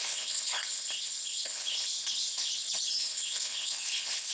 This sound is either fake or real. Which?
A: fake